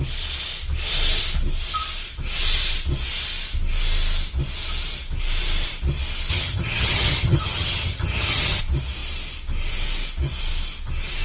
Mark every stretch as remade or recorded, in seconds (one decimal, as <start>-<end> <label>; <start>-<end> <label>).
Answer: 0.0-6.3 recorded; 6.3-8.6 remade; 8.6-11.2 recorded